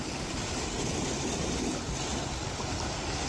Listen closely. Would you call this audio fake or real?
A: real